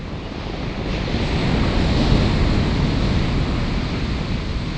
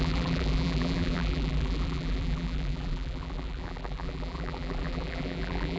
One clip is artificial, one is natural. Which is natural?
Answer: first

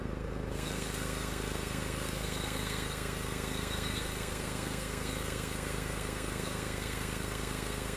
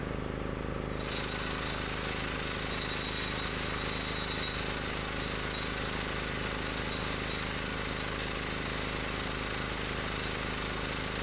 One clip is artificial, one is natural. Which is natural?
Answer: second